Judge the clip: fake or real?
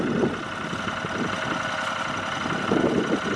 real